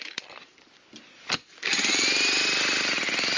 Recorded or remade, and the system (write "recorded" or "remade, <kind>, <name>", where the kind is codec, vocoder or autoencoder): recorded